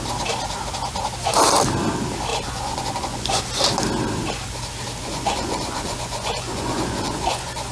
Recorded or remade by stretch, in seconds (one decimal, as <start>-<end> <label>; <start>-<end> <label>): 0.0-2.3 recorded; 2.3-3.4 remade; 3.4-5.0 recorded; 5.0-7.7 remade